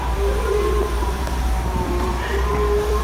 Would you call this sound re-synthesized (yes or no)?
yes